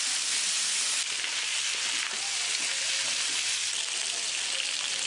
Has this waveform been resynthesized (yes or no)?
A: no